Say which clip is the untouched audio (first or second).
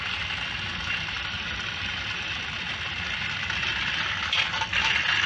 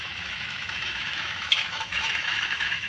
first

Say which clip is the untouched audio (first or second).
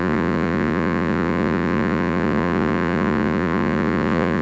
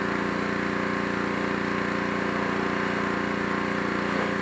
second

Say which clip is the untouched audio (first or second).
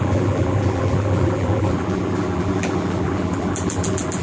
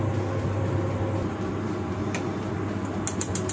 second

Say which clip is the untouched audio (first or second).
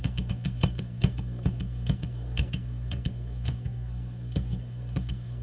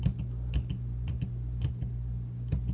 second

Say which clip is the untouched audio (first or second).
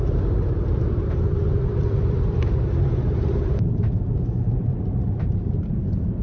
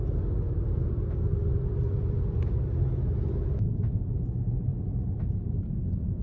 second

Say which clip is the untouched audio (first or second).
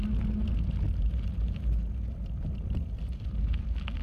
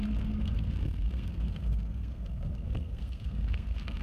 first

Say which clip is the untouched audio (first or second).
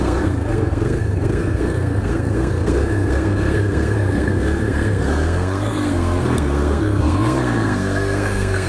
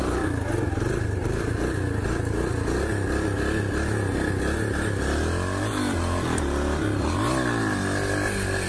second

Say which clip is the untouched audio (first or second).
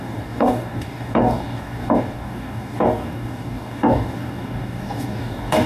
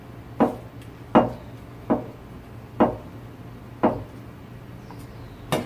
second